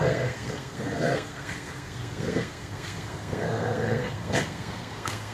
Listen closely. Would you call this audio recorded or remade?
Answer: remade